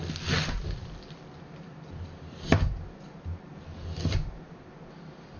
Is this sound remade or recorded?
recorded